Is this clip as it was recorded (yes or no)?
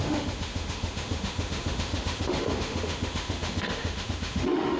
no